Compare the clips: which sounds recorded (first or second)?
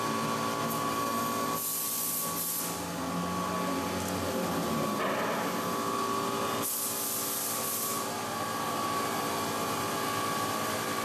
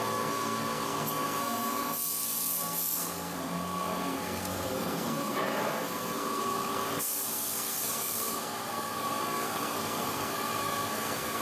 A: first